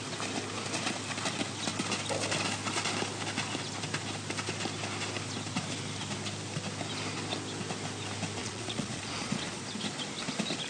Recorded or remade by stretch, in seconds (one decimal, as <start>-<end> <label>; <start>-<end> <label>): 0.0-8.4 recorded; 8.4-9.6 remade; 9.6-10.7 recorded